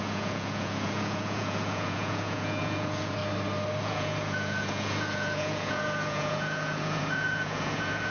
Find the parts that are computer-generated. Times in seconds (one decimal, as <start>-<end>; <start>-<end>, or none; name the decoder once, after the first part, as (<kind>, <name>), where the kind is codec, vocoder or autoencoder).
0.0-3.2 (vocoder, Vocos); 3.8-8.1